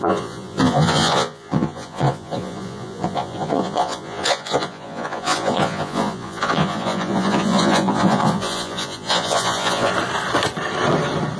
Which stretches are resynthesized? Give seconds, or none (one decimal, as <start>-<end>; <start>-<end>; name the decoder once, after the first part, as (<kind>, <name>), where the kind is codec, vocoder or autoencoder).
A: 0.0-9.9 (vocoder, Vocos)